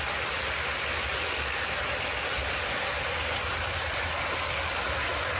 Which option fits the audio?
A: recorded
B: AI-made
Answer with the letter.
A